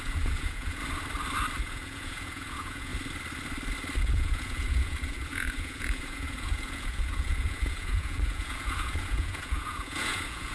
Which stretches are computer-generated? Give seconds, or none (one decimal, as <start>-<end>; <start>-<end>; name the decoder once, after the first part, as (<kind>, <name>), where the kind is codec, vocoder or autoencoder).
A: 0.0-0.8 (vocoder, Vocos); 1.6-2.9; 4.0-10.5